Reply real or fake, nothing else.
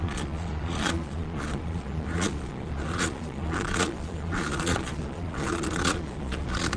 fake